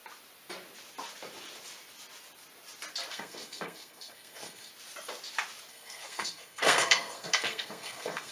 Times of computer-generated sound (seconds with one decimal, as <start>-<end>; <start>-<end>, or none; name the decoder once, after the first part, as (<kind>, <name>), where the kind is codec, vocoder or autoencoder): 3.1-4.7 (codec, SNAC); 5.7-8.3